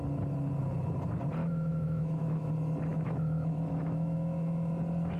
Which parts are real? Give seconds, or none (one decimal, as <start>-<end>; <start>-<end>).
0.0-1.4; 2.5-2.9; 4.7-5.2